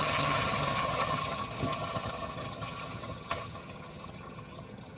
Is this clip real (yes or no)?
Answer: no